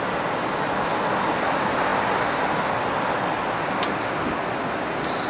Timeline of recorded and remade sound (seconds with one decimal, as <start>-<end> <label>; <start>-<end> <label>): 0.0-5.3 recorded